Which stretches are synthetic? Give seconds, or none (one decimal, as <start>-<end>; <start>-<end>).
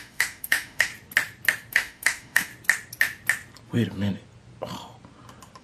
0.0-0.9; 1.7-2.5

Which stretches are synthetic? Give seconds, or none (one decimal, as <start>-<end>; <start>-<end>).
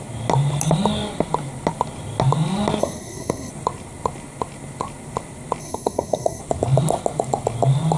2.8-3.5; 5.6-6.4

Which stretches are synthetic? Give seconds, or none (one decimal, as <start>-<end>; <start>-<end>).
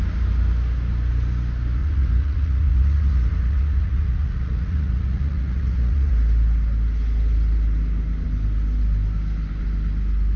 1.8-6.1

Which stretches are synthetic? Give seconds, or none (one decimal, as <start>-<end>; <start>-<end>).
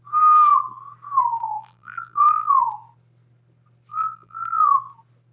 1.4-2.6; 3.9-4.7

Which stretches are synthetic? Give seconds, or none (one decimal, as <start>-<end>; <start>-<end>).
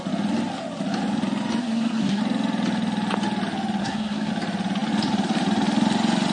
1.6-2.2; 3.8-4.3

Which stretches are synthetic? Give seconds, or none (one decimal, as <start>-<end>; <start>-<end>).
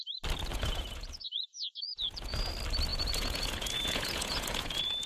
0.5-2.5; 2.9-5.1